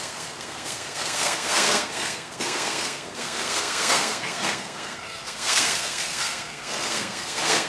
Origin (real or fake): fake